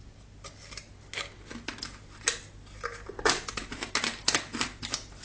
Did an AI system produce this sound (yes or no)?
no